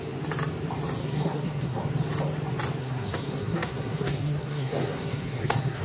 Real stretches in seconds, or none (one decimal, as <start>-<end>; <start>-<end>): 0.0-1.0; 1.8-2.8